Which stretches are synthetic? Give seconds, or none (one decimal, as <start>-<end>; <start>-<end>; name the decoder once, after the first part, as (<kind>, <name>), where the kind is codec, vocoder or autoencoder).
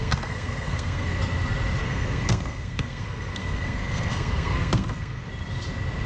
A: 0.0-1.2 (codec, SNAC); 1.8-5.3